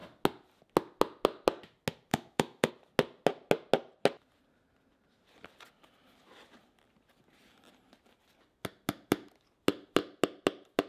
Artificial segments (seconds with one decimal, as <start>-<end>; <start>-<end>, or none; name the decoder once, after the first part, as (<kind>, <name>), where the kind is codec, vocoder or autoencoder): 2.1-2.7 (autoencoder, DAC-VAE)